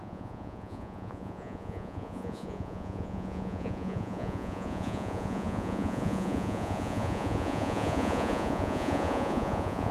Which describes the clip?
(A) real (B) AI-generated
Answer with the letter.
B